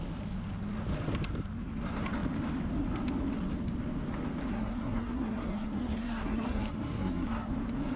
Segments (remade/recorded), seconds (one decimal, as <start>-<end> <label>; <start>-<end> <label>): 0.0-4.5 recorded; 4.5-7.5 remade; 7.5-8.0 recorded